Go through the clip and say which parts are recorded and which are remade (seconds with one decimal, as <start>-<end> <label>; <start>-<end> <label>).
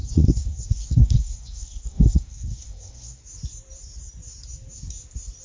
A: 0.0-3.2 remade; 3.2-5.4 recorded